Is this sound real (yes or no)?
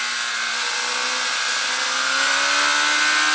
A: yes